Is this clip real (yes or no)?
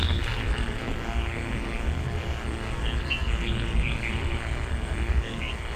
no